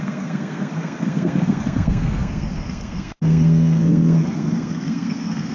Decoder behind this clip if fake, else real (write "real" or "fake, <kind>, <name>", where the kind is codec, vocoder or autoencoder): fake, codec, SNAC